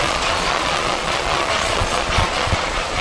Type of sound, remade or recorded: remade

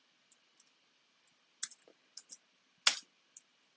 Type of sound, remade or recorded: recorded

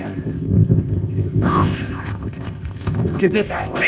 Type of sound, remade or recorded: remade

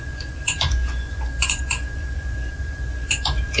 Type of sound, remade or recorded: remade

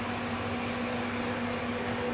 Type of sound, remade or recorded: recorded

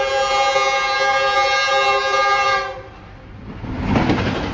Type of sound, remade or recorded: recorded